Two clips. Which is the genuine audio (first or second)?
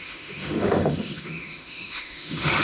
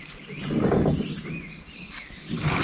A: second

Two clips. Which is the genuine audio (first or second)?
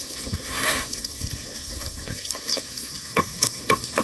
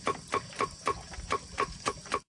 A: second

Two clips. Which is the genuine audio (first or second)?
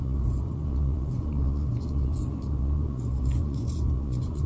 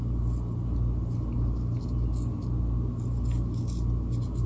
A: second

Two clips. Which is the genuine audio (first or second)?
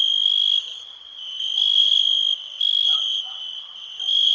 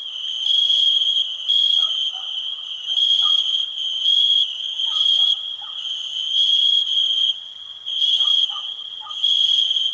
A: first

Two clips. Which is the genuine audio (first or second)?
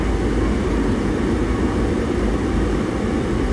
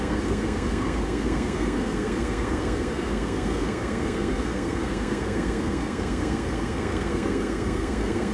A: first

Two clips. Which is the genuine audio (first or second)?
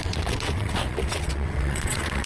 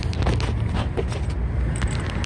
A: second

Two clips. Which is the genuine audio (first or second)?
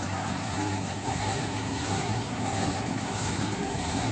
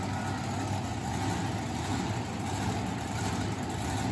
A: second